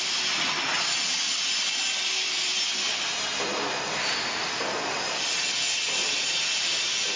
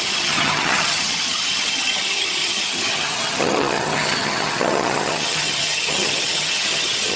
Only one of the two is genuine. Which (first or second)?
first